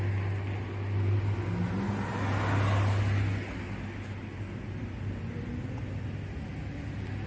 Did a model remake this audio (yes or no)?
no